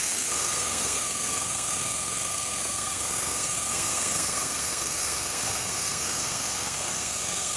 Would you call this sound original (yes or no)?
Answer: no